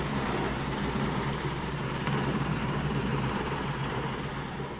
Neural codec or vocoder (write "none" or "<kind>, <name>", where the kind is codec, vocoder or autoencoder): vocoder, BigVGAN v2